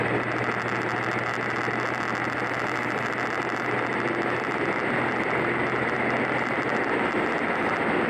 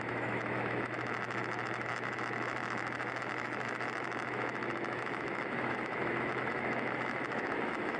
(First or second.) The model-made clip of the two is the second